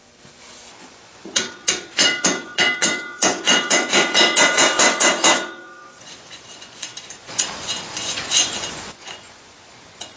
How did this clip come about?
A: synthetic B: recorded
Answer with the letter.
A